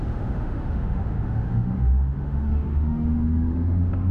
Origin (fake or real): fake